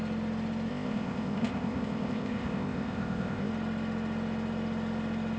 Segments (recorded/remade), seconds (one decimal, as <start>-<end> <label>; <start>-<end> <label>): 0.0-0.7 recorded; 0.7-3.5 remade; 3.5-5.4 recorded